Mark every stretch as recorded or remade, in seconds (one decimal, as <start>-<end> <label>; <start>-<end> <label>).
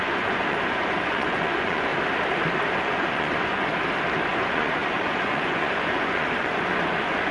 0.0-1.9 remade; 1.9-2.8 recorded; 2.8-3.7 remade; 3.7-4.3 recorded; 4.3-7.3 remade